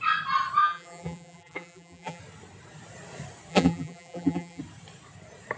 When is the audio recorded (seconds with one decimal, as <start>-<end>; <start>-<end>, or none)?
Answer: 0.0-0.6; 2.2-3.5; 4.6-5.6